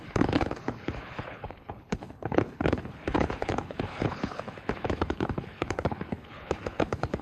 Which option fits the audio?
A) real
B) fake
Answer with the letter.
B